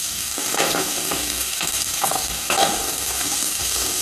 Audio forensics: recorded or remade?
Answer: remade